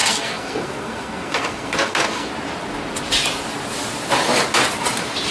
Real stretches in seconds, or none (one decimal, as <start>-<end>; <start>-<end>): 2.3-5.3